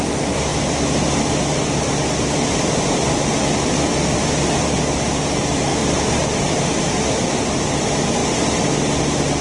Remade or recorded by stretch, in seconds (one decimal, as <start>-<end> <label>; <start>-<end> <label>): 0.0-9.4 recorded